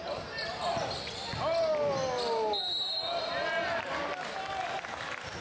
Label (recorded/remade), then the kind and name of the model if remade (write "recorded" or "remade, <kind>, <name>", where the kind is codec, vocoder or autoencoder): recorded